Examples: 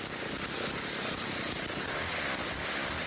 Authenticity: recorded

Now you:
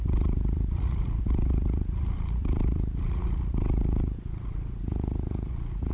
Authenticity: remade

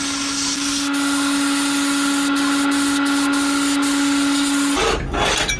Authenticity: recorded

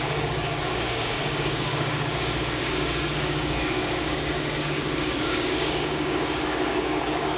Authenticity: remade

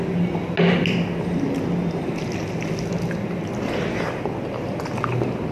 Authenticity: recorded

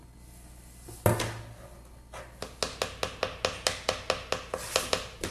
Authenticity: recorded